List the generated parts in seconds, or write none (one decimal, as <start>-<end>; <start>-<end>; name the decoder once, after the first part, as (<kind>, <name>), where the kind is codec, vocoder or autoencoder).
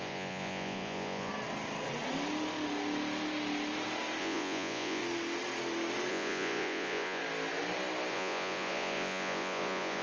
0.0-1.3 (vocoder, Vocos); 4.2-5.0; 6.1-7.2; 8.1-10.0